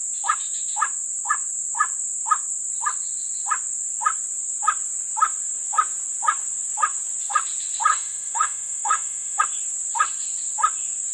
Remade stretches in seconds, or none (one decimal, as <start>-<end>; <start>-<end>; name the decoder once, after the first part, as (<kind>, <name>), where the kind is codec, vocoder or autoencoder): 7.9-9.4 (autoencoder, DAC-VAE)